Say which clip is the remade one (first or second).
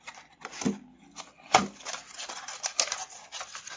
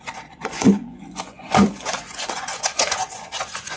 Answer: second